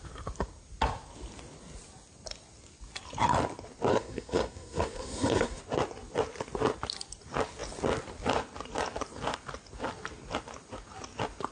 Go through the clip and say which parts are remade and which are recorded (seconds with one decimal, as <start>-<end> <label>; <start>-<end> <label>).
0.0-3.9 recorded; 3.9-5.6 remade; 5.6-11.5 recorded